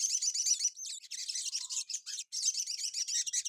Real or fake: real